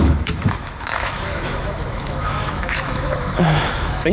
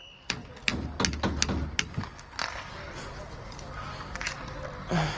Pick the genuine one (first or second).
second